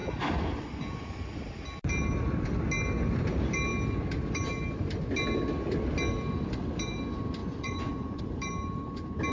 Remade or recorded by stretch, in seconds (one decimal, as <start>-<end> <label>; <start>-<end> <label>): 0.0-7.4 recorded; 7.4-8.2 remade; 8.2-9.3 recorded